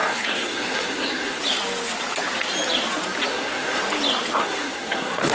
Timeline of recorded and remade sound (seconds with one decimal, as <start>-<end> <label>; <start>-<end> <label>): 0.0-1.4 remade; 1.4-3.3 recorded; 3.3-3.8 remade; 3.8-4.4 recorded; 4.4-5.3 remade